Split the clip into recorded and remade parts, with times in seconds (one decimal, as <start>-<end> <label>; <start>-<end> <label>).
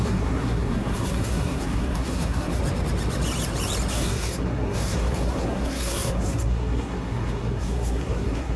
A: 0.0-2.6 remade; 2.6-3.9 recorded; 3.9-8.6 remade